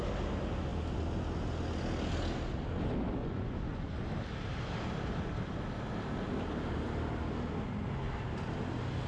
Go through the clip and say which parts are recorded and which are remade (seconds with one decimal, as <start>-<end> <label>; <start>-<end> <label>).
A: 0.0-3.2 recorded; 3.2-3.9 remade; 3.9-9.1 recorded